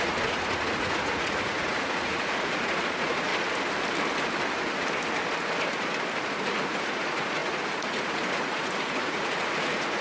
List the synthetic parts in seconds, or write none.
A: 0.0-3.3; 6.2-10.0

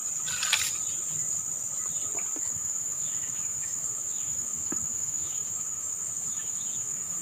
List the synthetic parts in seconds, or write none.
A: 2.4-7.2

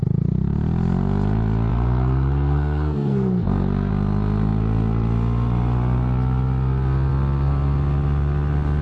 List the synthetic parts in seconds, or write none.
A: 1.7-3.9

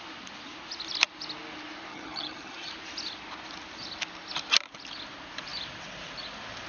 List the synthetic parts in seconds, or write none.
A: 1.9-2.7

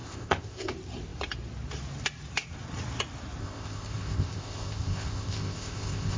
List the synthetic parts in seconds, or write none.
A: 0.0-0.7; 3.4-6.2

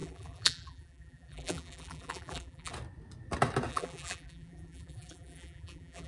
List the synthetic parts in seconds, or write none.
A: 0.0-2.7; 3.7-6.1